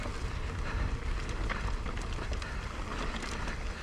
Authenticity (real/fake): real